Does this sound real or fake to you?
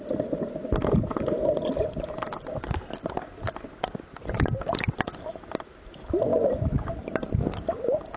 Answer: real